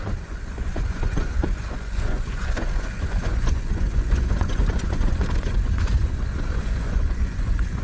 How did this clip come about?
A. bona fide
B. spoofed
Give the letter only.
B